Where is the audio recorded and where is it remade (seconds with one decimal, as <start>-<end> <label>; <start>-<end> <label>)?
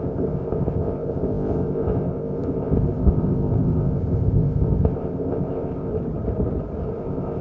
0.0-5.9 remade; 5.9-7.0 recorded; 7.0-7.4 remade